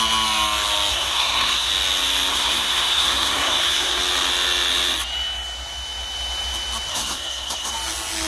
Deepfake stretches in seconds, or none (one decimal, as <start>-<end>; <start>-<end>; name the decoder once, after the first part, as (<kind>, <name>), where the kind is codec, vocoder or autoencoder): 0.9-1.7 (codec, SNAC); 2.3-4.0; 6.9-7.7